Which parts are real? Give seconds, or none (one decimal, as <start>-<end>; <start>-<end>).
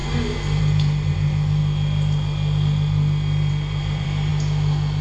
0.0-0.6; 1.6-3.5; 4.3-5.0